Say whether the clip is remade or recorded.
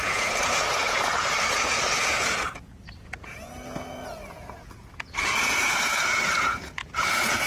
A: remade